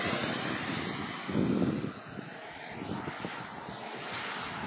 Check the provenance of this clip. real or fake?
real